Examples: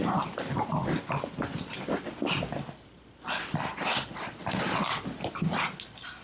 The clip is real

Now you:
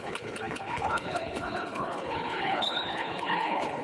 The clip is fake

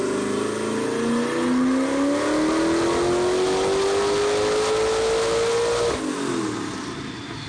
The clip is real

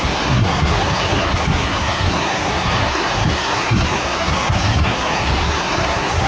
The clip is fake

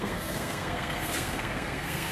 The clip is fake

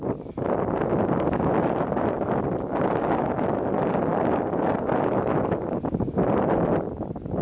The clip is real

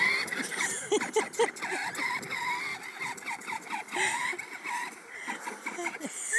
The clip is real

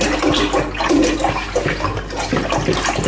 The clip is real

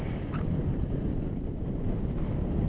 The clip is real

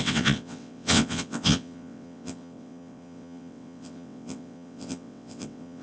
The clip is fake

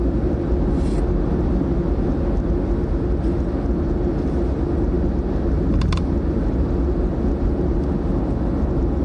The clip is real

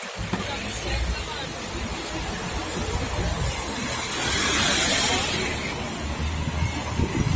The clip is real